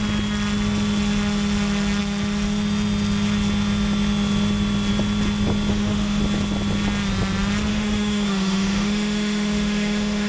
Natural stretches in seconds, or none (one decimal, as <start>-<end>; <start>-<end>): 0.0-5.7; 6.2-7.7